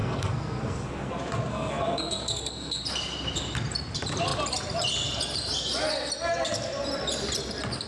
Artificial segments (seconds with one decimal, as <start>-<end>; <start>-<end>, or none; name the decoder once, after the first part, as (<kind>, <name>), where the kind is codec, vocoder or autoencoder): 0.0-1.1 (codec, SNAC); 1.5-2.8